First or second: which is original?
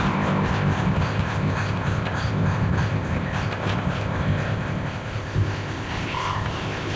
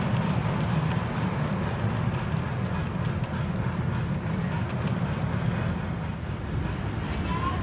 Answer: second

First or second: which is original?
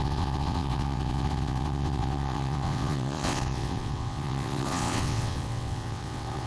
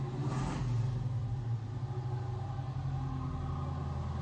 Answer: second